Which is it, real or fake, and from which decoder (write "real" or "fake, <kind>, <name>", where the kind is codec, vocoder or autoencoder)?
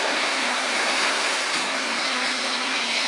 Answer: fake, codec, SNAC